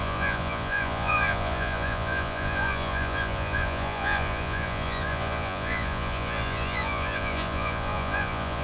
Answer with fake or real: fake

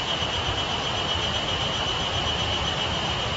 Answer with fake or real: real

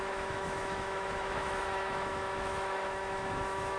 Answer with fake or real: fake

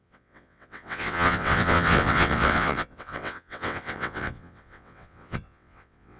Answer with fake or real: fake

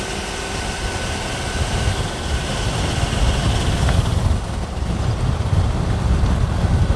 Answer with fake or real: real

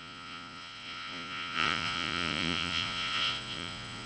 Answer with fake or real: fake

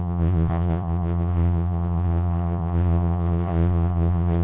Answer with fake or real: fake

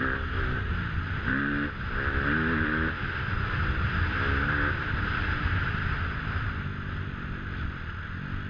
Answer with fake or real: real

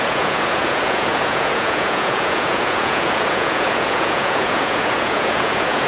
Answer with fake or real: fake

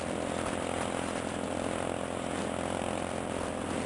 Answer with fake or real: real